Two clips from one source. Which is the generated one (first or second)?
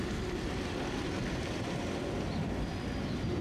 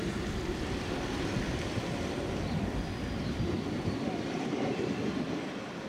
second